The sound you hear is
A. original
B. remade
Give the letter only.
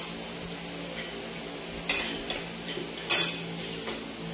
A